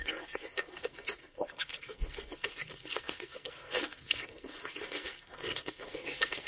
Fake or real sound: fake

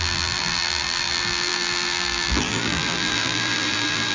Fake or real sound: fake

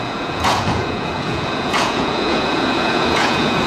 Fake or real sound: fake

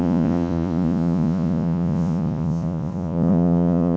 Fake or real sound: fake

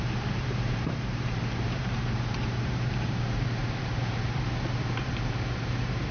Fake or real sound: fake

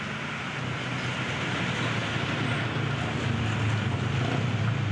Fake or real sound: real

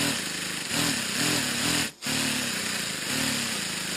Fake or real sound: real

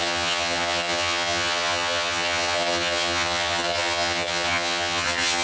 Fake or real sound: fake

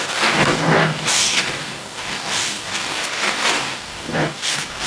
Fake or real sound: fake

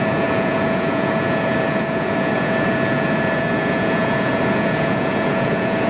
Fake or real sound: fake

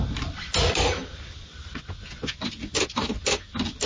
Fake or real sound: real